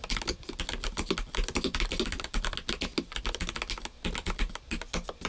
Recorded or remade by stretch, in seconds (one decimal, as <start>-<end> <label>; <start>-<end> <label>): 0.0-5.3 recorded

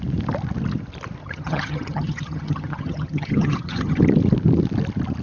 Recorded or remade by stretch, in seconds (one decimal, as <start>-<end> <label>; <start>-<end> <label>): 0.0-1.2 recorded; 1.2-4.0 remade; 4.0-5.2 recorded

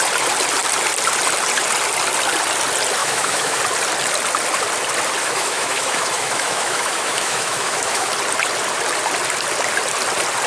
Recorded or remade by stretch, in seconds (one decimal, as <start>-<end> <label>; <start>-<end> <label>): 0.0-3.0 recorded; 3.0-3.6 remade; 3.6-5.2 recorded; 5.2-8.1 remade; 8.1-10.5 recorded